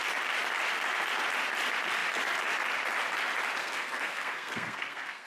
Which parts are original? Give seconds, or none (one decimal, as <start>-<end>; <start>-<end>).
0.0-3.6